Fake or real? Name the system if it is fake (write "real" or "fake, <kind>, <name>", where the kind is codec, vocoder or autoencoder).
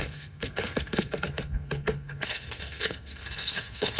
fake, codec, SNAC